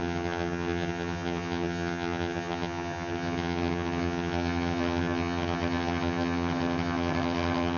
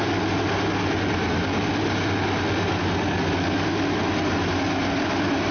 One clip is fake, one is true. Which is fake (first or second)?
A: first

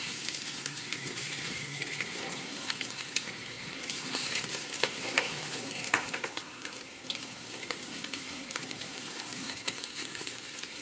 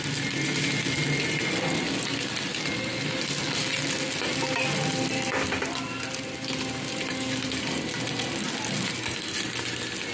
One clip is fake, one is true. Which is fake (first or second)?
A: first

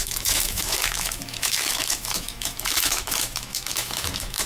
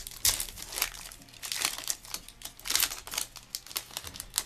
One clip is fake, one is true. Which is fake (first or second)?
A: first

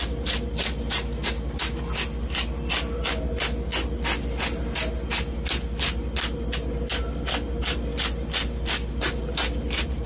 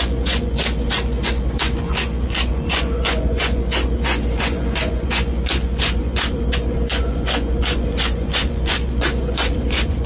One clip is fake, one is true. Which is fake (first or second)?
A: second